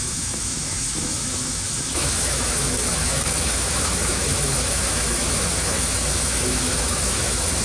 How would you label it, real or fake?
fake